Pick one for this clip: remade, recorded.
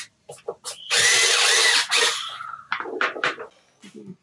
recorded